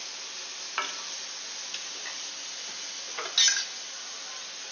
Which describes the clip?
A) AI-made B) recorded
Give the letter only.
B